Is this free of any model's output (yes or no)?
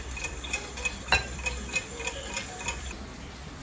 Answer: no